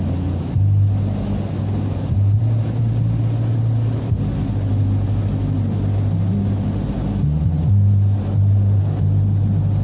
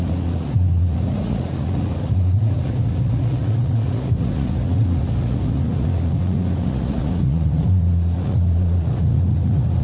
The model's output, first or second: second